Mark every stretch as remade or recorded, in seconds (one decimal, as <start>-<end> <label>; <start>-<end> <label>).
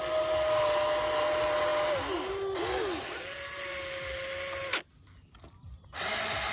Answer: 0.0-6.5 recorded